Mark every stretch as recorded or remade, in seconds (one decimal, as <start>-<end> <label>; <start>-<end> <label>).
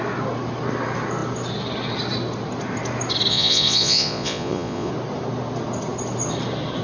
0.0-3.3 recorded; 3.3-4.9 remade; 4.9-6.8 recorded